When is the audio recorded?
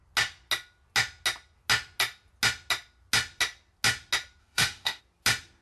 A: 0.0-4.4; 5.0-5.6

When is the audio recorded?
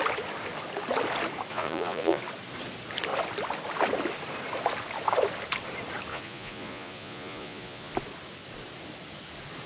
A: 0.0-1.5; 2.2-6.1; 7.9-9.7